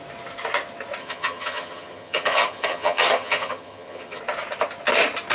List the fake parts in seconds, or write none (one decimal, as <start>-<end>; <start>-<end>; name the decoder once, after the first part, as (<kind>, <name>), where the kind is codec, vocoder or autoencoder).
1.0-4.2 (vocoder, HiFi-GAN)